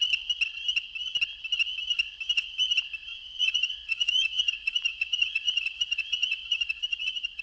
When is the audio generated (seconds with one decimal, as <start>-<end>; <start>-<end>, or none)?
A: 3.1-7.4